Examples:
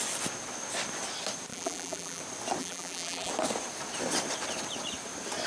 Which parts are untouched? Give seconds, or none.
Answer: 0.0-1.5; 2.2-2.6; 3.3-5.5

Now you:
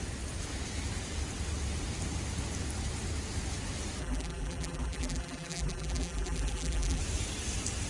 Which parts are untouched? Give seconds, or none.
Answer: 0.0-4.0; 7.0-7.9

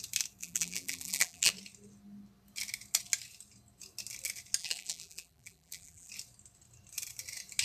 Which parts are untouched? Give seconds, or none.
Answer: 0.0-0.4; 1.5-4.6; 6.1-7.6

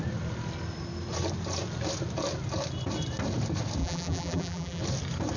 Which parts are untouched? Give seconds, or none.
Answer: 0.0-3.8; 4.8-5.4